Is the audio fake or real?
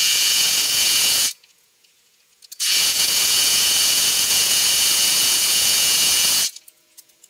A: fake